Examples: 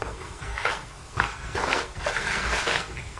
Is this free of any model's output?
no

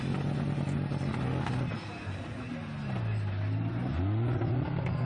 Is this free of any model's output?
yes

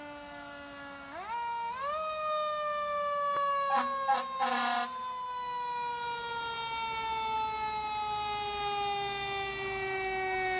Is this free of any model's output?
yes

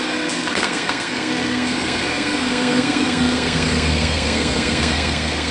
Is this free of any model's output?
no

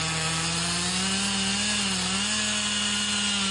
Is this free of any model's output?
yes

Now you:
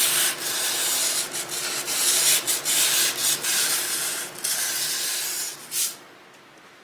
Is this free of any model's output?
yes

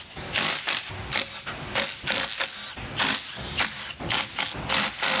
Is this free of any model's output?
yes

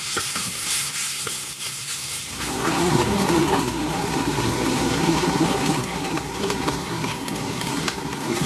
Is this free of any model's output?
no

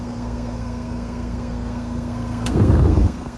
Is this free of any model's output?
no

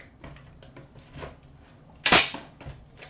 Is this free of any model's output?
yes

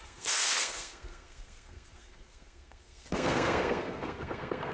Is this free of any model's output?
no